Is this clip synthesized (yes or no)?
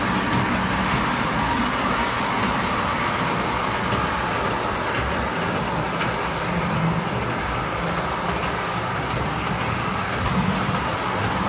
no